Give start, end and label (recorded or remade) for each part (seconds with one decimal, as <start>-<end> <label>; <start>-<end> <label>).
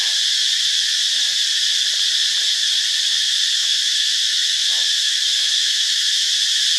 0.0-3.6 recorded; 3.6-6.3 remade; 6.3-6.8 recorded